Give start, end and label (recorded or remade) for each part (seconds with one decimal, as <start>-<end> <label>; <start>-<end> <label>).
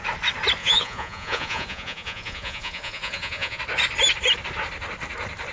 0.0-0.6 recorded; 0.6-3.6 remade; 3.6-5.5 recorded